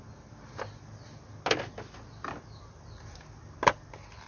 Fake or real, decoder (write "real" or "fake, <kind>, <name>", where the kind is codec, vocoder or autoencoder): real